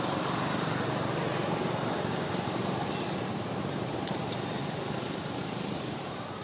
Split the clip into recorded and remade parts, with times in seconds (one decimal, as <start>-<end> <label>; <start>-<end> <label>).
0.0-4.6 remade; 4.6-5.4 recorded; 5.4-6.4 remade